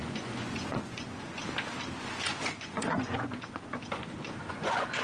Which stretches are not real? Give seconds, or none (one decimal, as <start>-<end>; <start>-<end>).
0.0-1.4; 2.0-4.0; 4.5-5.0